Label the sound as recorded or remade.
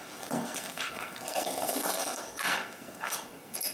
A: remade